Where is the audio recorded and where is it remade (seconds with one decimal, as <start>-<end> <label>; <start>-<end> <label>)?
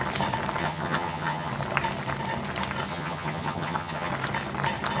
0.0-0.6 recorded; 0.6-1.5 remade; 1.5-2.9 recorded; 2.9-4.1 remade; 4.1-5.0 recorded